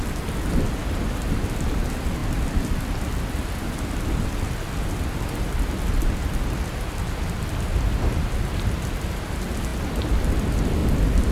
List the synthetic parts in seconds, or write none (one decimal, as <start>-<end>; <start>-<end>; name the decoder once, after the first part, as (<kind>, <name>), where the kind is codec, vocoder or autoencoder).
none